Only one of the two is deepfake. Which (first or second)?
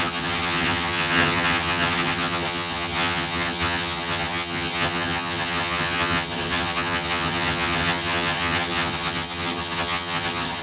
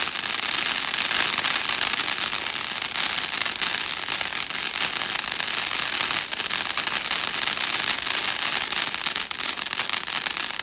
first